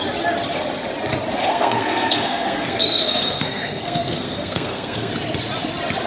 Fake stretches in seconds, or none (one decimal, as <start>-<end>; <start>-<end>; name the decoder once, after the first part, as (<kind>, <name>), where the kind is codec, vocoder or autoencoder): 1.4-5.1 (codec, SNAC)